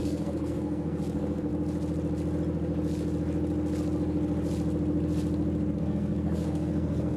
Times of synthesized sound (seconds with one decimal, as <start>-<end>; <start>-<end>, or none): 0.0-1.5; 5.8-7.2